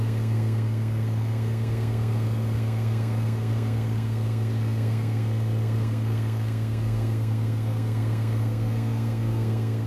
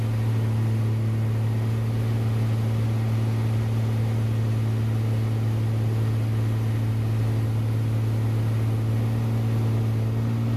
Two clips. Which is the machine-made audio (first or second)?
first